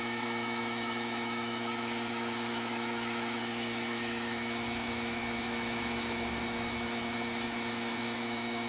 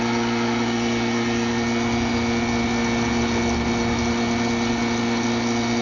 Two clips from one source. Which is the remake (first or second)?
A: first